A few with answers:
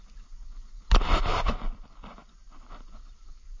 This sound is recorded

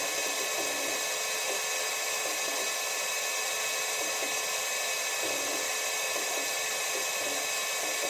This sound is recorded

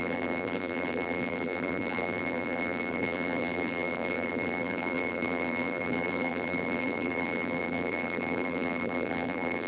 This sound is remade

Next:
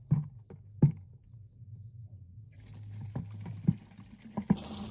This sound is recorded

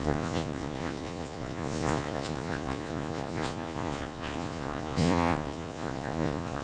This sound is remade